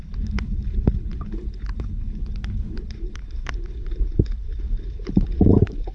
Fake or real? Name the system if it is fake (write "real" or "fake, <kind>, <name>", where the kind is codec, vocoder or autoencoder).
fake, codec, HILCodec